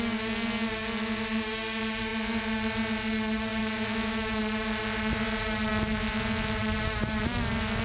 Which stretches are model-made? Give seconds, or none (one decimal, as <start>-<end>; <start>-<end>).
3.6-4.4

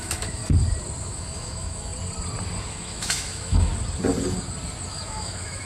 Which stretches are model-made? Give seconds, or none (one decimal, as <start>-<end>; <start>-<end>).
0.0-0.4; 1.0-1.9; 2.7-3.7; 4.9-5.7